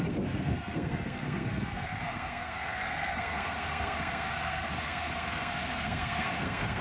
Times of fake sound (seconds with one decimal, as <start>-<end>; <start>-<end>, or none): 0.0-6.8